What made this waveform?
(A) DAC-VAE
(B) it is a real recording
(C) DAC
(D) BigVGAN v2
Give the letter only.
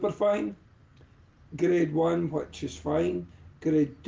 B